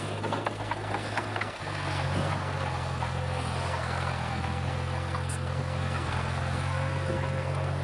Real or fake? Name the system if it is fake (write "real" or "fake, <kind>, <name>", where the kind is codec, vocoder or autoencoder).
fake, codec, SNAC